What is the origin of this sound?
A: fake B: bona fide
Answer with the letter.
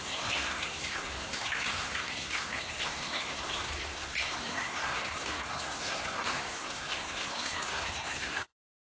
A